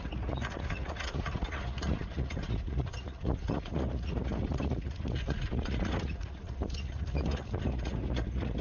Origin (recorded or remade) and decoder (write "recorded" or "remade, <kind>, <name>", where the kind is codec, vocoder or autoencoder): remade, vocoder, Vocos